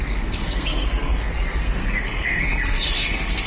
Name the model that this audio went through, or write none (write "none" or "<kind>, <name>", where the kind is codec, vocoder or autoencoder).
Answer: codec, SNAC